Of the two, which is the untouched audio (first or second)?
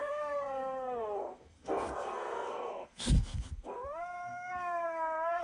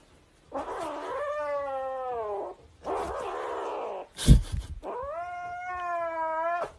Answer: second